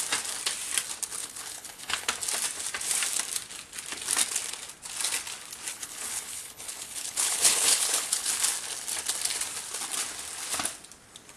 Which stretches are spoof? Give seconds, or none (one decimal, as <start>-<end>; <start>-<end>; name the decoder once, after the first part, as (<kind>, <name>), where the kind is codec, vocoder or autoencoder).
1.2-2.1 (codec, HILCodec); 5.7-8.3